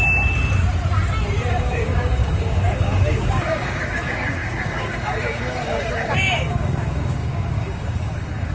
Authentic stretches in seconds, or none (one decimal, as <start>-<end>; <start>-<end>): 0.0-1.5